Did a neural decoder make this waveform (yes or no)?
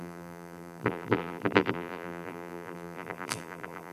yes